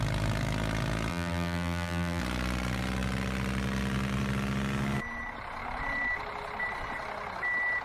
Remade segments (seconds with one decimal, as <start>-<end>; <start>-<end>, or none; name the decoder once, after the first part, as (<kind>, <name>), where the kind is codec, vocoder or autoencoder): 1.1-2.2 (vocoder, BigVGAN v2)